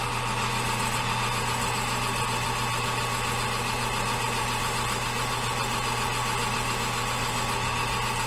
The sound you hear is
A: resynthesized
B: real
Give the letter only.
B